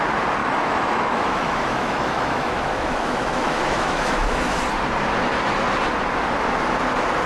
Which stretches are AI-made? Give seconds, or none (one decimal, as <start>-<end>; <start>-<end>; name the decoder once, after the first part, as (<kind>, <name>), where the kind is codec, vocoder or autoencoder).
0.4-4.6 (autoencoder, DAC-VAE)